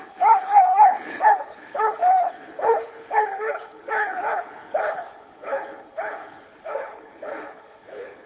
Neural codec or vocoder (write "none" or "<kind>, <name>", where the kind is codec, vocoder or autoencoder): codec, HILCodec